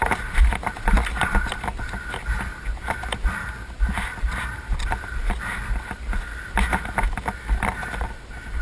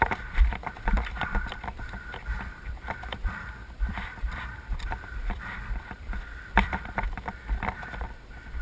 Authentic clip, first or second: first